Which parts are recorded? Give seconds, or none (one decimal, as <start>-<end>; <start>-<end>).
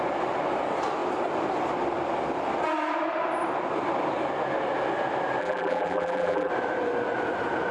0.0-5.4; 6.5-7.7